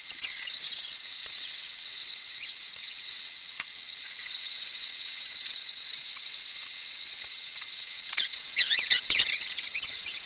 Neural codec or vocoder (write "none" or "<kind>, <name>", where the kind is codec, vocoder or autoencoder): vocoder, WaveNeXt